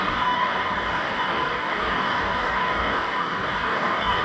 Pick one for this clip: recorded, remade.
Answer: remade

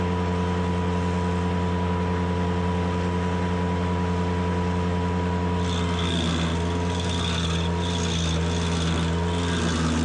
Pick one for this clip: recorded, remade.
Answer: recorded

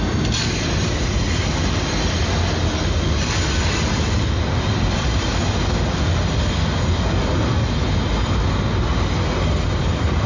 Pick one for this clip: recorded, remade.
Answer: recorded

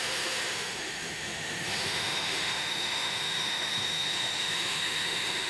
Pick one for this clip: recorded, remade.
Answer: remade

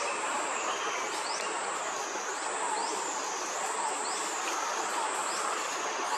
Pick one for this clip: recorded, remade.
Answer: recorded